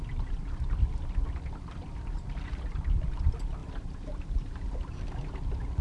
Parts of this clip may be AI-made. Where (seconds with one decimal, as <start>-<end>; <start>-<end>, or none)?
3.6-4.7